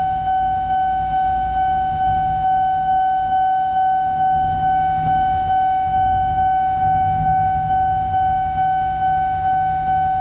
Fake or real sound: fake